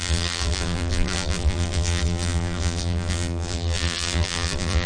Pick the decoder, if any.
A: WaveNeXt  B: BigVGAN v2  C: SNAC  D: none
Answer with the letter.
B